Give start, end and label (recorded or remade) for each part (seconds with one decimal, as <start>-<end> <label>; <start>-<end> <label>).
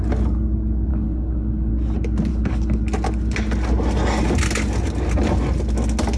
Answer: 0.0-0.9 recorded; 0.9-1.7 remade; 1.7-2.3 recorded; 2.3-2.8 remade; 2.8-6.2 recorded